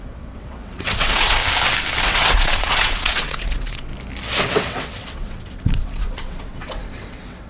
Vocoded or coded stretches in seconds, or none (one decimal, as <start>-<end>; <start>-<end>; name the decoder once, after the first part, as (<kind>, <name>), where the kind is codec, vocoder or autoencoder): 0.0-1.4 (vocoder, WaveNeXt); 2.0-3.9; 4.4-7.5